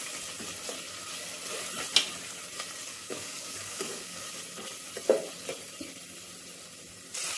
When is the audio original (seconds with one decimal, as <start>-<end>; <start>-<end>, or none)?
0.0-2.9; 4.2-7.4